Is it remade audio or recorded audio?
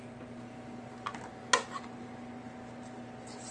recorded